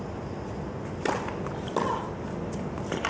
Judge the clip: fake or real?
real